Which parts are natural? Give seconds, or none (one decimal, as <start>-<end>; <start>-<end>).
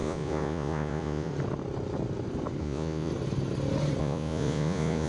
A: 1.3-2.6; 3.1-4.0